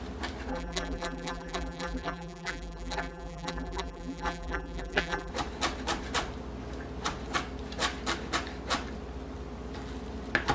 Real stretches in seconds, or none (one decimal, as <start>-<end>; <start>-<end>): 0.0-0.5; 5.3-10.5